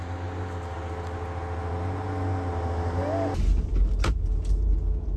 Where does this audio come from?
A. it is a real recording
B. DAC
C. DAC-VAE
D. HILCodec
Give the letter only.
A